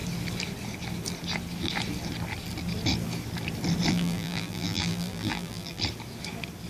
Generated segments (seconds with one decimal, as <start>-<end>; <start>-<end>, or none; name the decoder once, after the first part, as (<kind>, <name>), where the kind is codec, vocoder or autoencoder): 3.9-5.8 (vocoder, BigVGAN v2)